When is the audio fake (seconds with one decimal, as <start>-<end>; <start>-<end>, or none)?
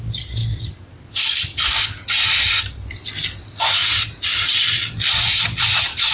none